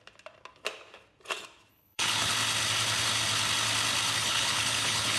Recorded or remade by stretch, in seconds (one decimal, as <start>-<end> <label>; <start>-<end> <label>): 0.0-1.7 recorded; 1.7-2.3 remade; 2.3-4.2 recorded; 4.2-5.2 remade